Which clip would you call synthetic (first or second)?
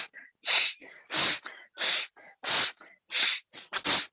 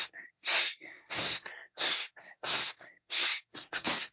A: second